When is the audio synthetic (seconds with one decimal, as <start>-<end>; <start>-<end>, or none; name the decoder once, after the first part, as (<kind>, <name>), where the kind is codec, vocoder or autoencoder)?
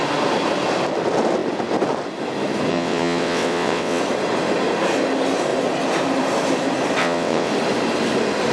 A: 2.7-4.0 (vocoder, WaveNeXt); 7.0-7.5